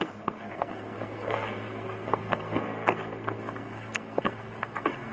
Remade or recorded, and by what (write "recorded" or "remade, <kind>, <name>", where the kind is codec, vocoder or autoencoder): remade, codec, SNAC